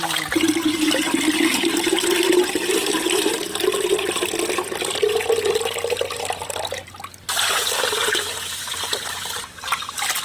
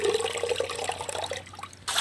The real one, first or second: first